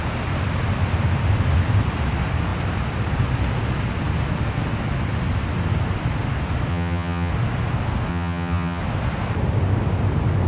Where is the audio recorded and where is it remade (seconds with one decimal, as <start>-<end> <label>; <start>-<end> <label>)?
0.0-6.7 recorded; 6.7-7.3 remade; 7.3-8.1 recorded; 8.1-8.8 remade; 8.8-10.5 recorded